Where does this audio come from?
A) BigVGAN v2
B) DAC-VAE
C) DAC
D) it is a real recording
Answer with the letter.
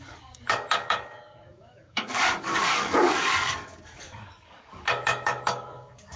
C